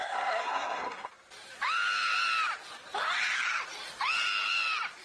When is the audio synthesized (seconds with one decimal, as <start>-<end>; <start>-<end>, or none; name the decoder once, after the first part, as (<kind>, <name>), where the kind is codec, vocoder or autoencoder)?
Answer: 0.0-1.1 (codec, SNAC)